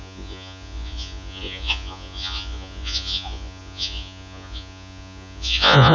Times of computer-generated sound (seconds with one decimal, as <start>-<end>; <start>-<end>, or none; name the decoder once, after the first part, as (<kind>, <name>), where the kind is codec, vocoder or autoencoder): 0.0-5.9 (vocoder, Vocos)